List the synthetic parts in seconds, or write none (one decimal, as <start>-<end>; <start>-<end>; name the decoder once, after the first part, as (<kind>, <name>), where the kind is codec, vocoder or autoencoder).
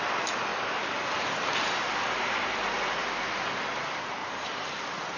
0.5-2.6 (vocoder, BigVGAN v2); 4.2-4.8